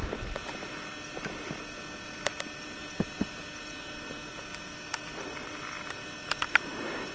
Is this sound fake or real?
real